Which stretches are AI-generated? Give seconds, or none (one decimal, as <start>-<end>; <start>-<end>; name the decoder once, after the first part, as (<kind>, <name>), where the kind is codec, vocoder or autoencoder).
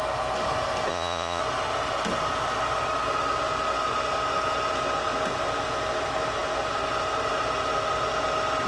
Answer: 0.9-1.4 (vocoder, Vocos)